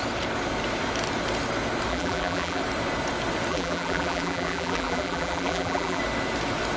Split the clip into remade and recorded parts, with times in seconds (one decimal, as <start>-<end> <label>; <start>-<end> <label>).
0.0-1.9 recorded; 1.9-2.6 remade; 2.6-3.5 recorded; 3.5-6.0 remade; 6.0-6.8 recorded